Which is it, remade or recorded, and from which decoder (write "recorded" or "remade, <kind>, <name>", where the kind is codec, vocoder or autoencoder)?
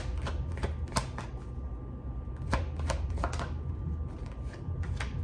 recorded